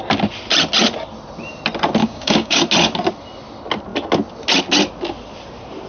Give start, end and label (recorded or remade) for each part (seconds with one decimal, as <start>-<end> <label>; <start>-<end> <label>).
0.0-2.0 recorded; 2.0-2.6 remade; 2.6-5.9 recorded